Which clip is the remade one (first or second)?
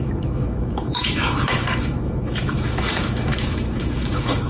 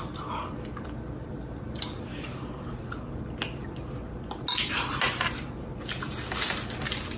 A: first